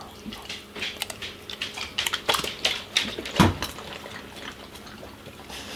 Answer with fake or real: fake